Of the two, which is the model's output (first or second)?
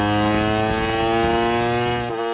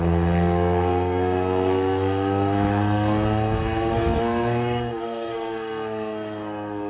second